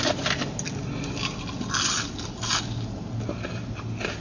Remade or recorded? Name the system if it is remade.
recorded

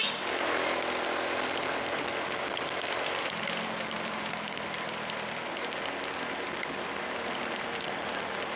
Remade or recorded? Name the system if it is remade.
recorded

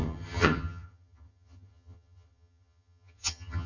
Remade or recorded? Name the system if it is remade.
remade, vocoder, HiFi-GAN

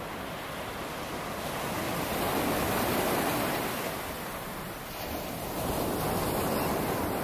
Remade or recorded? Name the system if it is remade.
recorded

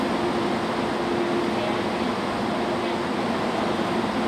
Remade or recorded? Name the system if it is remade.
recorded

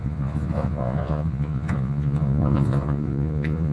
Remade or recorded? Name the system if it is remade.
remade, vocoder, Vocos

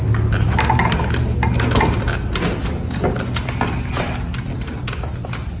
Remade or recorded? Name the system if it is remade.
recorded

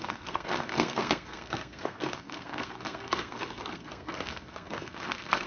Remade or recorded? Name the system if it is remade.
remade, codec, SNAC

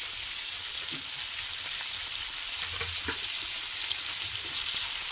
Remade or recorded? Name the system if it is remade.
recorded